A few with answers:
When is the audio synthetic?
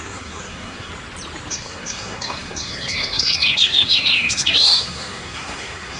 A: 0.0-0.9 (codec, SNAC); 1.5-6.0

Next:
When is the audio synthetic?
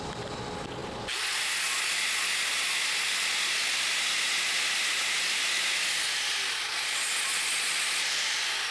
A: none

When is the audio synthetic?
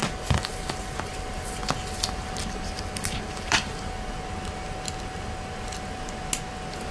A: 0.0-4.1 (vocoder, BigVGAN v2)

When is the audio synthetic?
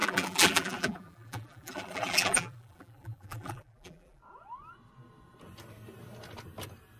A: 0.0-4.2 (vocoder, BigVGAN v2)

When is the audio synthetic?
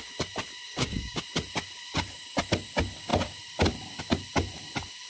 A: 0.7-1.2 (codec, DAC)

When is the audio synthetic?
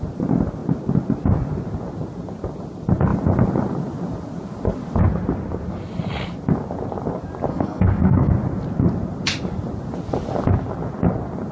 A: 7.5-8.3 (codec, SNAC)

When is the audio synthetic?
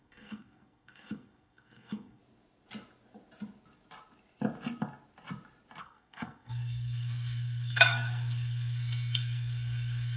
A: 0.0-2.2 (codec, SNAC); 5.8-10.2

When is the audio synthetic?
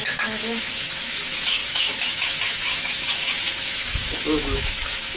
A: 0.0-5.2 (autoencoder, DAC-VAE)